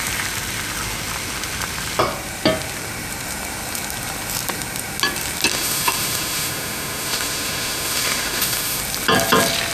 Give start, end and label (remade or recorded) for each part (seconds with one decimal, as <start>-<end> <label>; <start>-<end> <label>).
0.0-5.5 recorded; 5.5-8.8 remade; 8.8-9.7 recorded